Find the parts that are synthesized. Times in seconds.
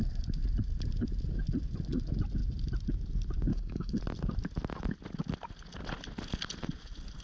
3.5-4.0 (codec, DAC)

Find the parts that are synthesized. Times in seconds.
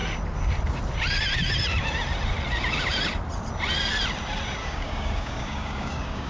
4.6-6.3 (codec, DAC)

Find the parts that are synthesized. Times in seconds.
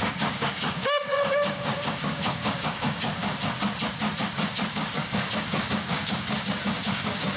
0.0-3.3 (codec, DAC); 4.7-7.4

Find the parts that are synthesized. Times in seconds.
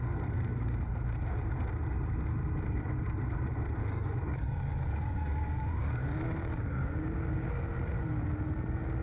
3.8-7.5 (codec, DAC)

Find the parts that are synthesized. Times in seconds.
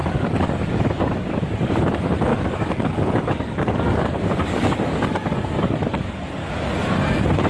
0.0-1.7 (codec, DAC); 2.3-6.5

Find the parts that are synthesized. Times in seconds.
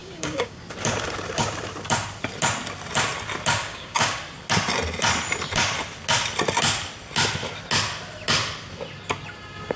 0.0-0.6 (codec, DAC); 3.6-4.2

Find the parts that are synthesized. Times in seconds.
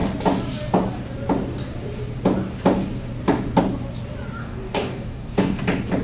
4.4-5.6 (codec, DAC)